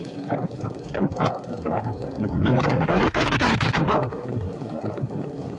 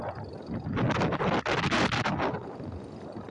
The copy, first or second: first